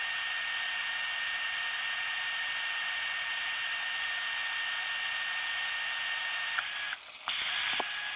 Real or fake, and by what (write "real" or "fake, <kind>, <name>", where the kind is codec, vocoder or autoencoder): real